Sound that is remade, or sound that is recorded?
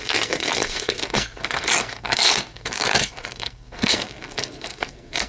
remade